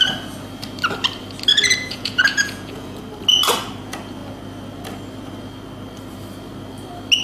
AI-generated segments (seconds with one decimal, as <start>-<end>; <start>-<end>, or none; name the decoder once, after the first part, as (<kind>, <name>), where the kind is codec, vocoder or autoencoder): 1.5-3.0 (vocoder, Vocos)